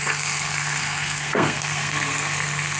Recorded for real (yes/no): no